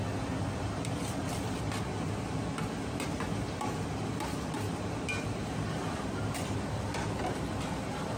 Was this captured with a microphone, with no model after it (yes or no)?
yes